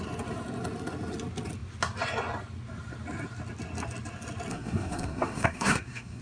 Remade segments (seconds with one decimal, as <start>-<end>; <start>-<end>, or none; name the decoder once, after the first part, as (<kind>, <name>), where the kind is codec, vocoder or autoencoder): 4.5-6.2 (codec, SNAC)